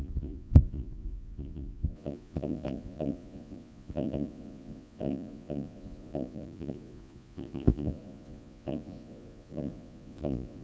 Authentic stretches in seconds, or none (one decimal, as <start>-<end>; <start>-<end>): none